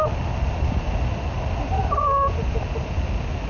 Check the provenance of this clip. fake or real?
real